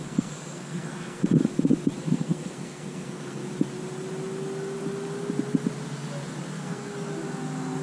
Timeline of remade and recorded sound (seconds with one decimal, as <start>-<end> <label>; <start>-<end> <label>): 0.0-1.2 remade; 1.2-2.0 recorded; 2.0-3.4 remade; 3.4-6.5 recorded; 6.5-6.9 remade; 6.9-7.8 recorded